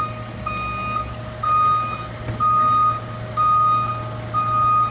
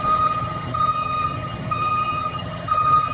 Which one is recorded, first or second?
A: first